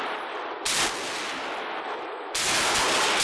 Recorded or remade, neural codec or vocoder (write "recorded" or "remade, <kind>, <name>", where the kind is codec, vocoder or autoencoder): recorded